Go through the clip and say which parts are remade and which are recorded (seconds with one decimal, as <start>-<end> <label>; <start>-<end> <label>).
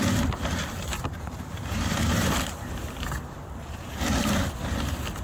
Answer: 0.0-0.9 recorded; 0.9-4.0 remade; 4.0-5.2 recorded